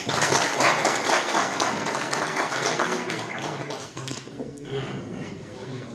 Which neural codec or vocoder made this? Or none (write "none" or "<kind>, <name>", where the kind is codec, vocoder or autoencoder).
codec, SNAC